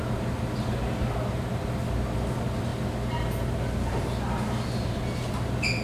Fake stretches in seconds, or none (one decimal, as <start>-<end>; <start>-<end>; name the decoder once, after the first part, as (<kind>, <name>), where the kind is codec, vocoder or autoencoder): none